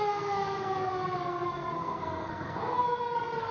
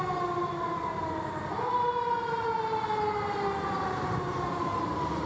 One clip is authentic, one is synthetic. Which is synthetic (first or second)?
first